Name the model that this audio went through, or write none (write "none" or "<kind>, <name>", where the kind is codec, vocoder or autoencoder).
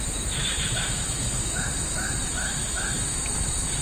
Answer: autoencoder, DAC-VAE